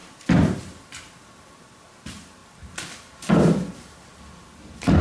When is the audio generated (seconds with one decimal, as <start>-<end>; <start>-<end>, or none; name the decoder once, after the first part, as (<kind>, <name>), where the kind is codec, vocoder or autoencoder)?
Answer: 0.0-2.4 (vocoder, BigVGAN v2); 4.3-5.0